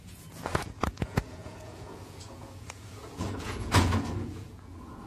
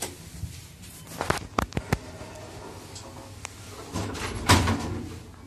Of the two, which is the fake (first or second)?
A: first